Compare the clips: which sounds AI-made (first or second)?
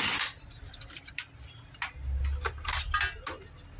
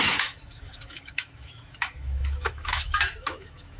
second